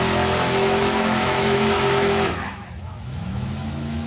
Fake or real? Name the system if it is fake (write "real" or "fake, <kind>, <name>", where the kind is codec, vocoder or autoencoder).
fake, autoencoder, DAC-VAE